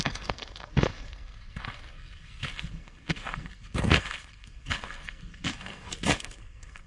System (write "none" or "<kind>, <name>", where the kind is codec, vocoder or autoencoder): codec, SNAC